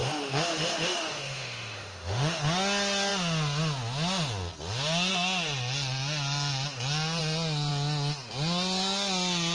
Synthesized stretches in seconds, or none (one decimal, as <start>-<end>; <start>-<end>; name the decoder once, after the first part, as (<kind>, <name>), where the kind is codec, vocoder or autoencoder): 0.0-2.4 (autoencoder, DAC-VAE)